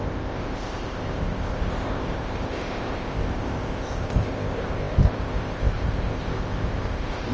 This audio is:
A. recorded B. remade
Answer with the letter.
B